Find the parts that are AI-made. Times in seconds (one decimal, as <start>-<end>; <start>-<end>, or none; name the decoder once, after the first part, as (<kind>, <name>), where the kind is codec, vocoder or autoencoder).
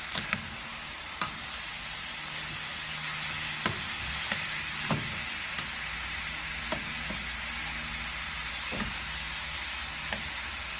none